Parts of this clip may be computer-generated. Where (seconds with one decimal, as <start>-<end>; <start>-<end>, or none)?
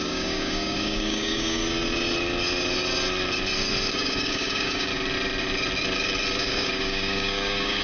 0.0-1.6; 3.9-4.9; 6.4-7.8